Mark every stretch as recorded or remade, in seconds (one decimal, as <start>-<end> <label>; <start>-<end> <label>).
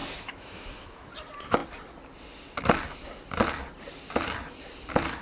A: 0.0-1.1 remade; 1.1-5.2 recorded